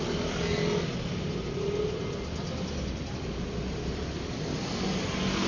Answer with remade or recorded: recorded